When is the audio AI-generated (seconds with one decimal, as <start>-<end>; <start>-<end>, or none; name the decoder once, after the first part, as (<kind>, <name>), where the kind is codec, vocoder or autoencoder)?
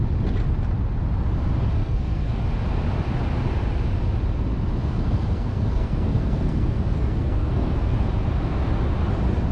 1.8-2.4 (codec, SNAC); 4.8-8.1